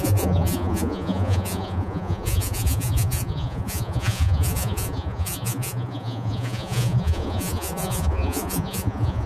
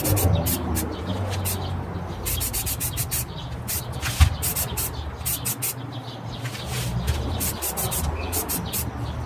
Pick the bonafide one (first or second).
second